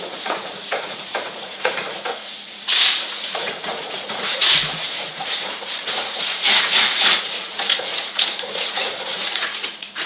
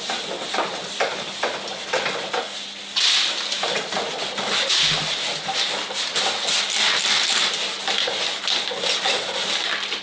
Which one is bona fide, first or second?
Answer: second